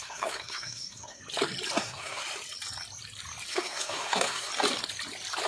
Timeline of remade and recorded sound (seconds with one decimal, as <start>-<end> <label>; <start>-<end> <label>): 0.0-1.2 remade; 1.2-1.8 recorded; 1.8-2.2 remade; 2.2-3.5 recorded; 3.5-4.5 remade; 4.5-5.5 recorded